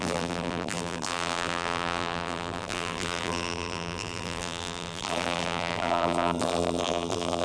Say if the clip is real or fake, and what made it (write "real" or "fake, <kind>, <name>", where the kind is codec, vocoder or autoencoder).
fake, vocoder, BigVGAN v2